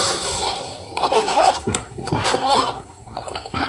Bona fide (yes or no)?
no